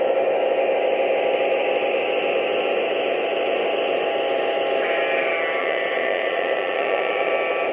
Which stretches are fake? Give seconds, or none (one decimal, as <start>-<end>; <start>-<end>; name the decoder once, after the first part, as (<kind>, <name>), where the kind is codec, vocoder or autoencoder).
5.6-7.3 (vocoder, Vocos)